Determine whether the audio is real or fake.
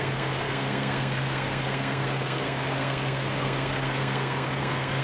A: fake